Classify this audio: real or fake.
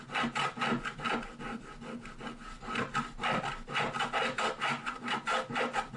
real